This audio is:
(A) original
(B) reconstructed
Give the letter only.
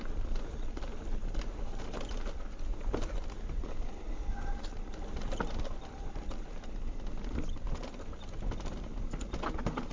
A